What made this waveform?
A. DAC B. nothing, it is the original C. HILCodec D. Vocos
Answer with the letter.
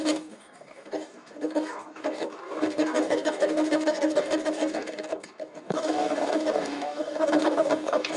A